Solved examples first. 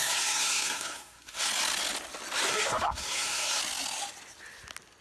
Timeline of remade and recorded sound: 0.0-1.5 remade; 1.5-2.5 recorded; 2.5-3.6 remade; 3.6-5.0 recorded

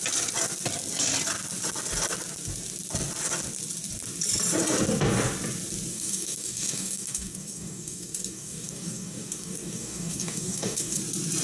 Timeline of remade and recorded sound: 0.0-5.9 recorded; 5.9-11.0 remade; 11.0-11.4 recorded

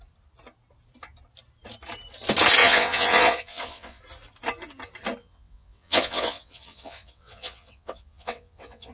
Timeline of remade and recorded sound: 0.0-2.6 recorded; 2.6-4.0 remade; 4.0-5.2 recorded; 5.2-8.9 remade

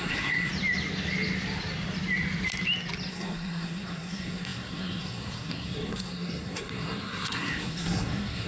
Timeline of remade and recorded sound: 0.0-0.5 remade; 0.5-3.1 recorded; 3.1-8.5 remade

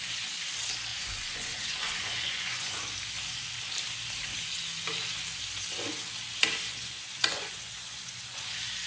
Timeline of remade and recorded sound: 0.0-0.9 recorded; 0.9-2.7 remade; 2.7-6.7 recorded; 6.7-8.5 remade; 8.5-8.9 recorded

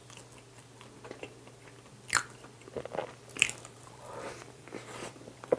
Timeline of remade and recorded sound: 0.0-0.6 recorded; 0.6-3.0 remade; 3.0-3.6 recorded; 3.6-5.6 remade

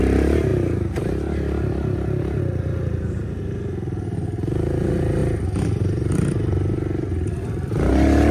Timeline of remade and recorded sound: 0.0-8.3 recorded